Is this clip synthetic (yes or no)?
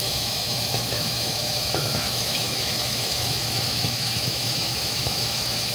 yes